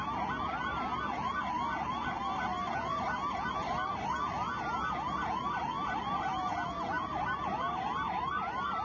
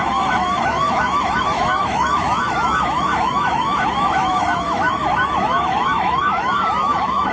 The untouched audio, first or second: first